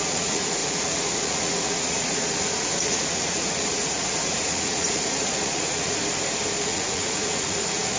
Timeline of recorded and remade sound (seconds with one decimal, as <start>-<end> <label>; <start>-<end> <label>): 0.0-6.0 remade; 6.0-6.6 recorded; 6.6-8.0 remade